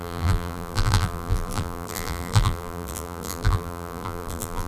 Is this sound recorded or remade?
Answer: remade